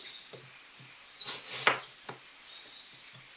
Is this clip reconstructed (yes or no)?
no